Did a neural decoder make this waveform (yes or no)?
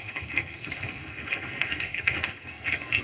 yes